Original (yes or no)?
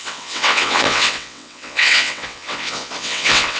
no